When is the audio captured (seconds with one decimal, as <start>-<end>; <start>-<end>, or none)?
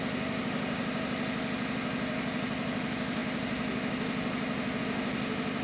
0.0-5.6